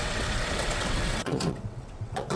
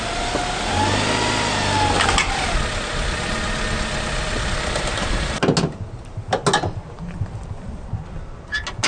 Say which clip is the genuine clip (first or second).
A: second